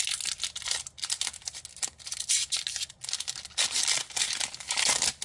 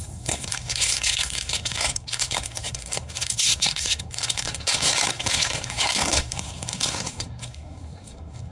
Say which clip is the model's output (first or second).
second